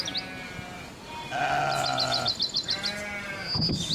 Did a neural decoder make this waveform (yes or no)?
no